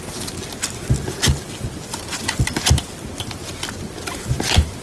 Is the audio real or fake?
real